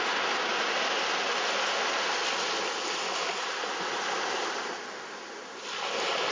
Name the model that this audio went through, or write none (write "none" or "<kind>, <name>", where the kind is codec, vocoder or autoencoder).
none